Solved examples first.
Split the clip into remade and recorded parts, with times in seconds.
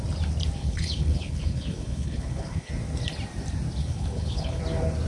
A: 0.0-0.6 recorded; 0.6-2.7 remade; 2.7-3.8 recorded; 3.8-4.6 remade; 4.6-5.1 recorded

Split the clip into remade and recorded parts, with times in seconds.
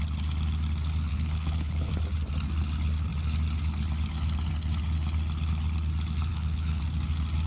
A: 0.0-1.1 recorded; 1.1-1.9 remade; 1.9-6.3 recorded; 6.3-6.8 remade; 6.8-7.5 recorded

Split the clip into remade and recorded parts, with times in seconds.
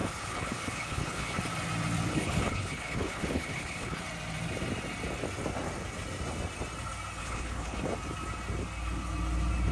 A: 0.0-1.4 remade; 1.4-2.1 recorded; 2.1-4.0 remade; 4.0-7.2 recorded; 7.2-7.8 remade; 7.8-9.7 recorded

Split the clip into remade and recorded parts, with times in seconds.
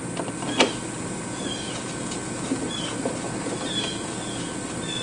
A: 0.0-5.0 recorded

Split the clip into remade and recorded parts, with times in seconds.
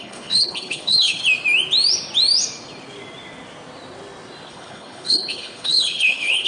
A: 0.0-1.2 remade; 1.2-4.5 recorded; 4.5-6.5 remade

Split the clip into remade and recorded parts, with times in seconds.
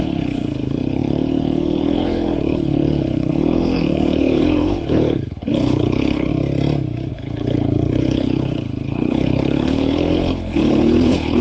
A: 0.0-6.3 remade; 6.3-7.1 recorded; 7.1-11.4 remade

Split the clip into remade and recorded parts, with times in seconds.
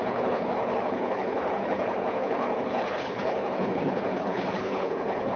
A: 0.0-5.4 remade